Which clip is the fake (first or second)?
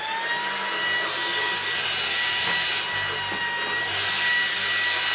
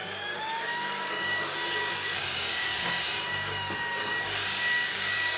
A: second